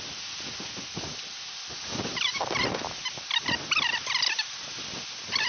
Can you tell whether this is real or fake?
real